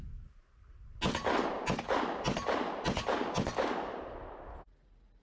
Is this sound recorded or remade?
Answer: recorded